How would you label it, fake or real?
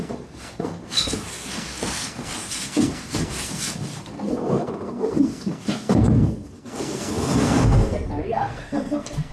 fake